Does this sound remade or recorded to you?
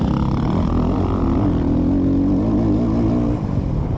recorded